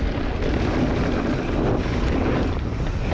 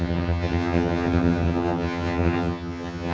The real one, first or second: first